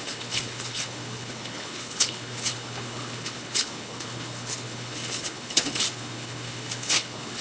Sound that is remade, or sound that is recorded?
remade